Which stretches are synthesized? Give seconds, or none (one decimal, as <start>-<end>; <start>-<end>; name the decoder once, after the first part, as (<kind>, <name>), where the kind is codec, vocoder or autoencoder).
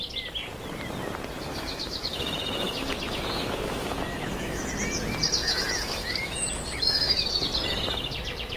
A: 1.5-4.7 (autoencoder, DAC-VAE); 5.4-7.4